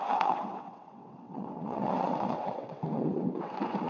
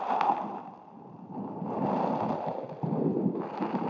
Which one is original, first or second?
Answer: second